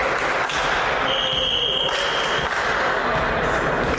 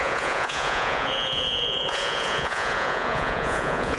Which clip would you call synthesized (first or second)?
second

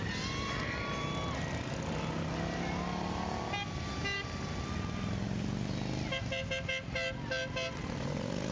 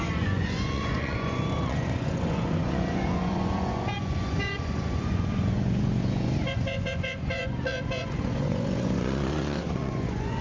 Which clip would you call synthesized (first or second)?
second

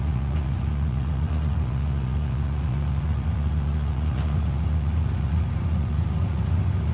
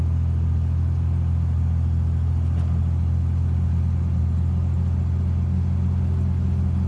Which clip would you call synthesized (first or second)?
first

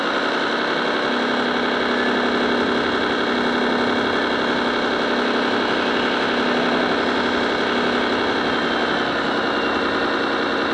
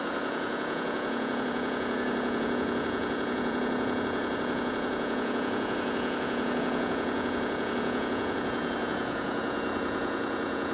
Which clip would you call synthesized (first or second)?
second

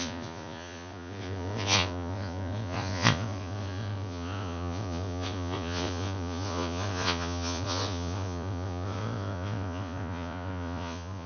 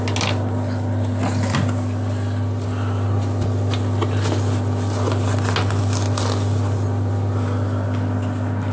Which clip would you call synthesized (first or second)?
first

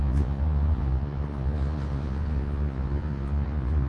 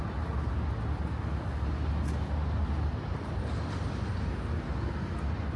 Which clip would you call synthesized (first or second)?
first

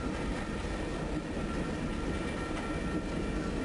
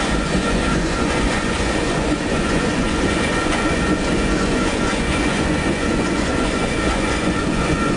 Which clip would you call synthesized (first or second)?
second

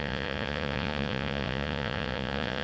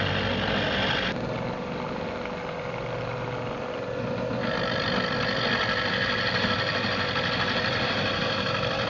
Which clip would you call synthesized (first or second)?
first